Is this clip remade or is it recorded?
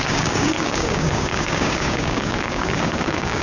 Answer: remade